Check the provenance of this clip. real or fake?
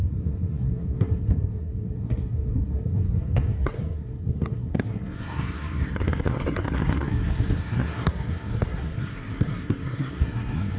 fake